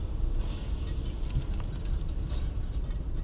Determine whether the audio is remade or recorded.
recorded